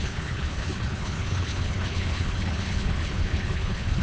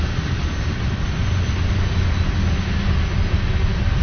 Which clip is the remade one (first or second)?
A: first